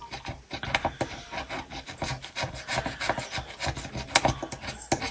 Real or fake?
real